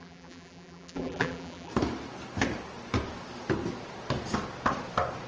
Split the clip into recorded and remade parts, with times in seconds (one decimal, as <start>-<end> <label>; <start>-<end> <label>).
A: 0.0-1.7 remade; 1.7-5.3 recorded